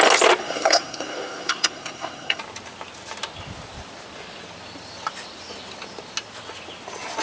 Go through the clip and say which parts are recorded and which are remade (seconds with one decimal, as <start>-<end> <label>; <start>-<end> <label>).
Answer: 0.0-0.4 recorded; 0.4-2.4 remade; 2.4-7.2 recorded